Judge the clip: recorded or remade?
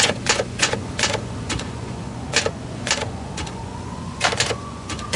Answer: remade